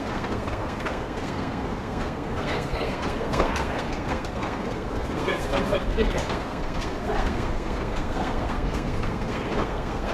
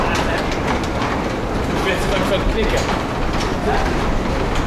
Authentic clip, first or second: second